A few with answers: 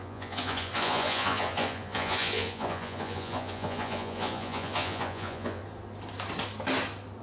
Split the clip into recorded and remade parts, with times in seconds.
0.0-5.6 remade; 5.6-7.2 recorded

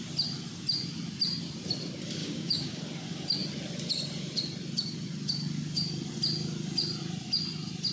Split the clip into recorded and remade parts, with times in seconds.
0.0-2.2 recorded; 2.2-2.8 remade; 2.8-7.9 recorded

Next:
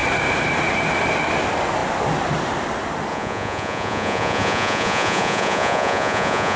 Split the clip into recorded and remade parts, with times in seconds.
0.0-3.1 recorded; 3.1-6.6 remade

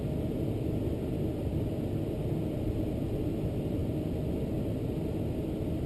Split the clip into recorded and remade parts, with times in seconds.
0.0-5.9 recorded

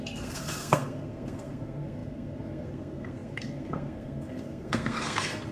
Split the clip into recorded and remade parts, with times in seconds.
0.0-5.5 remade

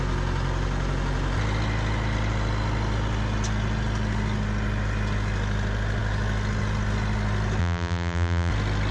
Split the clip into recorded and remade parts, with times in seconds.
0.0-7.6 recorded; 7.6-8.5 remade; 8.5-8.9 recorded